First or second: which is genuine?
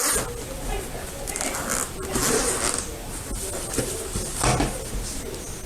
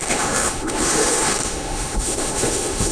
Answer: first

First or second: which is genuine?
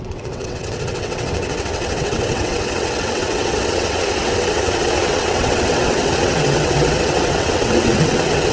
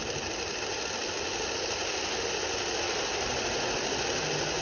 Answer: second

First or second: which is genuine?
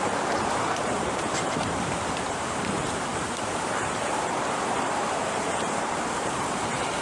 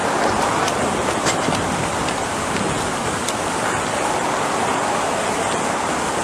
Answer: second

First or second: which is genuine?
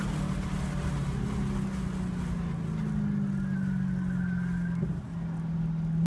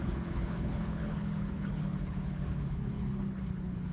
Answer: first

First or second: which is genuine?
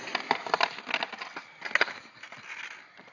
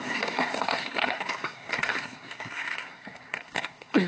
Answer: first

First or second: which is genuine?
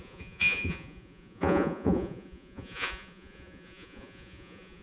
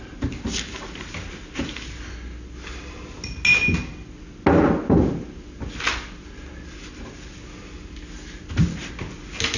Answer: second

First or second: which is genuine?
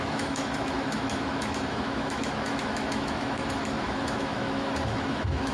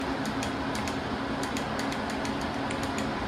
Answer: second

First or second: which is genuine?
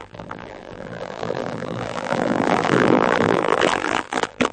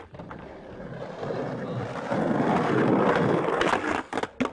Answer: second